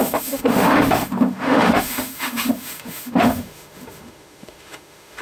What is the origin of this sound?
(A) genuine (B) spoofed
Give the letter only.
B